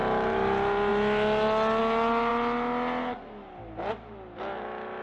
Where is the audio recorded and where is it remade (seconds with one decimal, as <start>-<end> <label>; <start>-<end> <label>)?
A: 0.0-5.0 recorded